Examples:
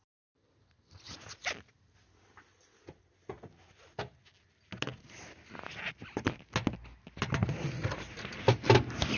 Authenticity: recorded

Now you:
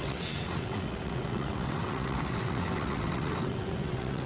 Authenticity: remade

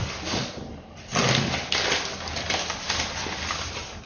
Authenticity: remade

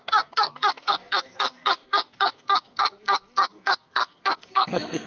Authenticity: remade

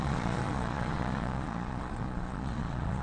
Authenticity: remade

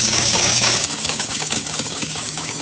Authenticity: remade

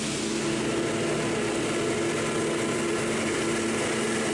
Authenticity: recorded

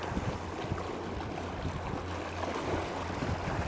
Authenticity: recorded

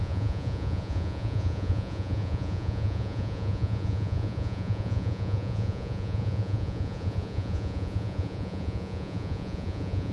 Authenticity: remade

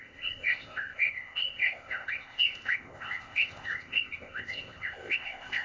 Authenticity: remade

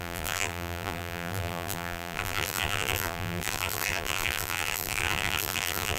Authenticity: remade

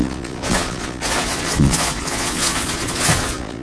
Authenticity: remade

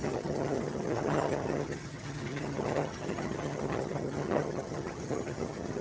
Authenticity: remade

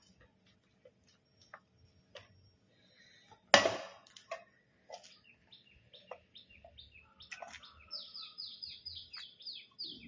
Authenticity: recorded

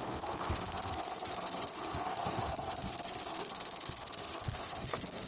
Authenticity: remade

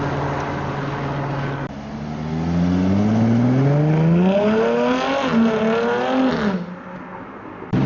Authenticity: recorded